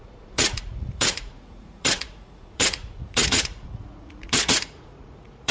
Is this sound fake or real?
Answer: fake